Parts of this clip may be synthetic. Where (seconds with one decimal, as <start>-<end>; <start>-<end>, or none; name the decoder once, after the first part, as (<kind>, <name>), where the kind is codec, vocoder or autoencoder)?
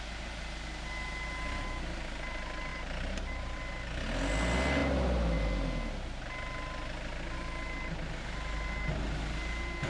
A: 2.7-3.6 (vocoder, BigVGAN v2)